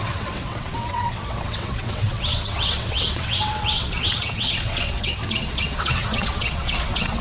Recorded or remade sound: remade